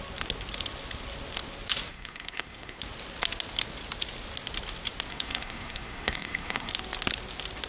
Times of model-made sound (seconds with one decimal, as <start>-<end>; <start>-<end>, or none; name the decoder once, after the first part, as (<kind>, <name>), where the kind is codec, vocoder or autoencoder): 1.9-2.8 (codec, SNAC); 5.1-6.7